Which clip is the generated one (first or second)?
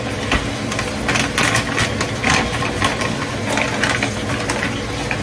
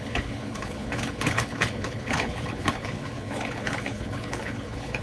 second